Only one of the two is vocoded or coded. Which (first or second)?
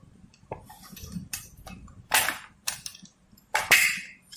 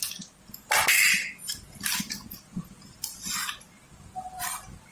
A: first